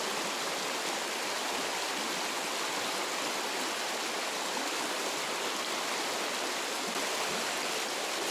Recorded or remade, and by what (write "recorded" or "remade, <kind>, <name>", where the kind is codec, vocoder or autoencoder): recorded